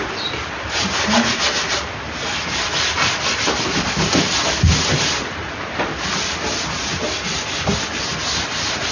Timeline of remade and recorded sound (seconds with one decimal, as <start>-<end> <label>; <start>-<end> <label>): 0.0-8.9 recorded